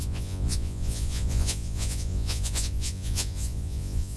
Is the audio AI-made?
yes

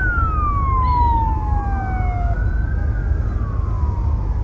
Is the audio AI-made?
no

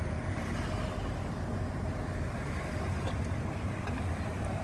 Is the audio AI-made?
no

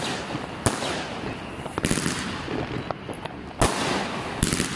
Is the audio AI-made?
no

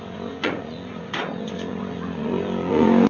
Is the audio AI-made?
yes